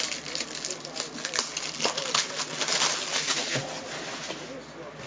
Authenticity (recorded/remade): recorded